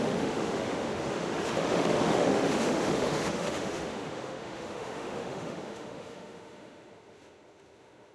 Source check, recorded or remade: remade